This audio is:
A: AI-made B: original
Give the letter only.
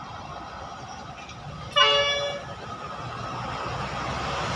B